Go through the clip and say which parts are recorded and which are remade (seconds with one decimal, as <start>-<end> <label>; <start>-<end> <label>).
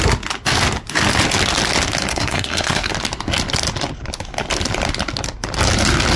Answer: 0.0-2.1 recorded; 2.1-2.9 remade; 2.9-6.2 recorded